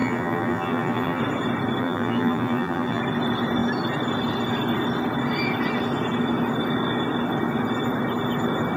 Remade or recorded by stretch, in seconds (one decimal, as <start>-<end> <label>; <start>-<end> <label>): 0.0-1.2 remade; 1.2-1.8 recorded; 1.8-3.0 remade; 3.0-8.8 recorded